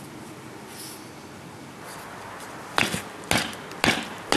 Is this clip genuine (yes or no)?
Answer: yes